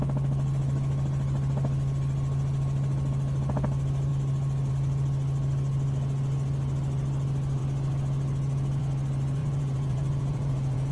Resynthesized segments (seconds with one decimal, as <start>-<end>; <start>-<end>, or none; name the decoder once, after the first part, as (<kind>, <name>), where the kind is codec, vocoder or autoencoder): 9.4-10.9 (vocoder, Vocos)